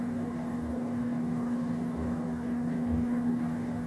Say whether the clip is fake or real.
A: fake